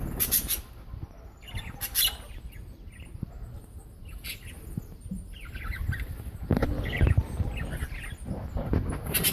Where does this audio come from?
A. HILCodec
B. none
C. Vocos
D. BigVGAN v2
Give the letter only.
B